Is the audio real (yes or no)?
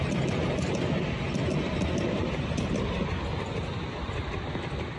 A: yes